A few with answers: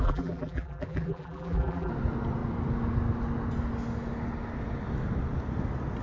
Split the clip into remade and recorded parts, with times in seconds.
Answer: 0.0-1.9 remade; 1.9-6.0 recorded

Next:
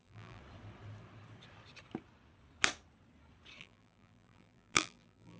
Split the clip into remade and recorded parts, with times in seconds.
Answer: 0.0-0.4 remade; 0.4-3.6 recorded; 3.6-5.4 remade

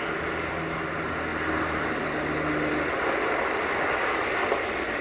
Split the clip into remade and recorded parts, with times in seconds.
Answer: 0.0-5.0 recorded

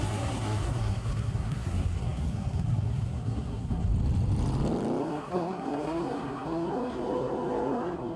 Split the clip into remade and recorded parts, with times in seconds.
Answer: 0.0-3.9 remade; 3.9-5.0 recorded; 5.0-8.2 remade